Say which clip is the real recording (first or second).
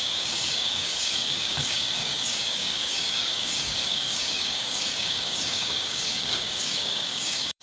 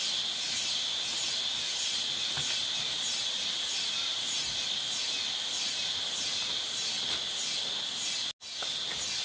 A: second